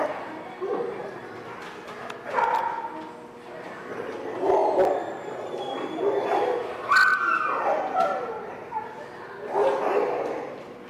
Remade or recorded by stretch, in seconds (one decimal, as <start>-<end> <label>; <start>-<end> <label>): 0.0-4.6 recorded; 4.6-6.5 remade; 6.5-7.1 recorded; 7.1-8.8 remade; 8.8-10.9 recorded